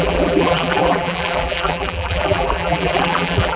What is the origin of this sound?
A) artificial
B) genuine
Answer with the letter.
A